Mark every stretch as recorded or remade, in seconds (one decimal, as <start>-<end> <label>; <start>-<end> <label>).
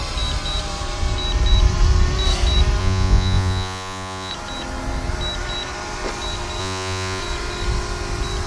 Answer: 0.0-2.8 recorded; 2.8-4.3 remade; 4.3-6.6 recorded; 6.6-7.2 remade; 7.2-8.5 recorded